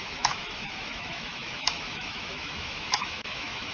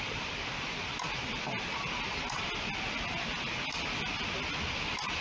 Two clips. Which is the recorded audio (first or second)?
second